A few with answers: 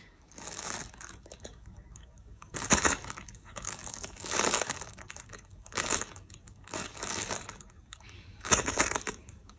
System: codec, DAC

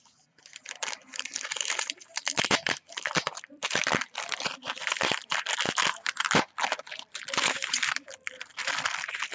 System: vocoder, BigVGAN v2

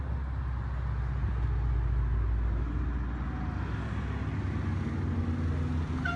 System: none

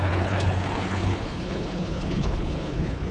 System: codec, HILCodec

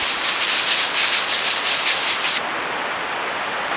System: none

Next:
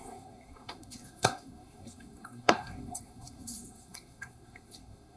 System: codec, SNAC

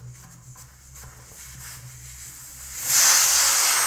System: none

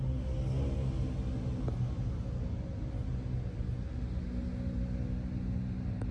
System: none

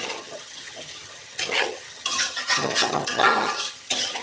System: vocoder, HiFi-GAN